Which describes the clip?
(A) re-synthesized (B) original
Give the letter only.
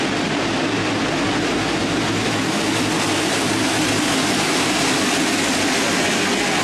B